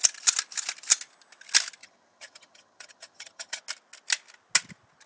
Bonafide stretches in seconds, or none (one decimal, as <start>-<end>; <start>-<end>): 0.0-1.8; 3.6-5.1